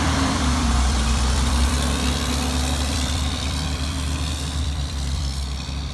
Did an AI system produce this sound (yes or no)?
yes